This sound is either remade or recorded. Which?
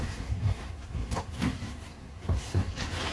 remade